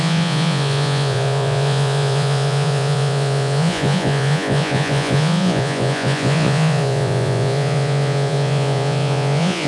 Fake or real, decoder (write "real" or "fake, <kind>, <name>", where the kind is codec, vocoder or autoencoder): fake, vocoder, Vocos